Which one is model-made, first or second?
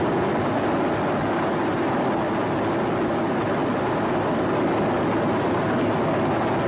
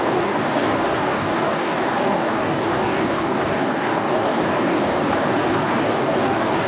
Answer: second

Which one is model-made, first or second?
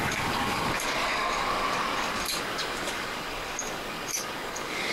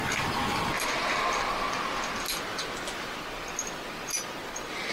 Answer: first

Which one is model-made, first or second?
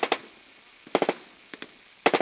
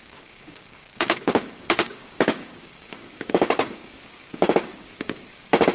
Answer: second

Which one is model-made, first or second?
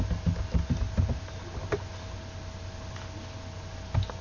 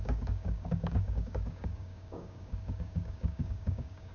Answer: second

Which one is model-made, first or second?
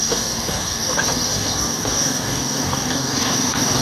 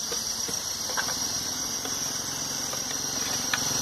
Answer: first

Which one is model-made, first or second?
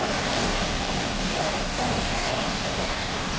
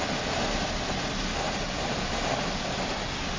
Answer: first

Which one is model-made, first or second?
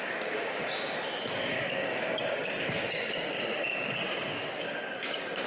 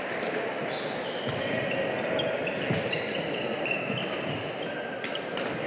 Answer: first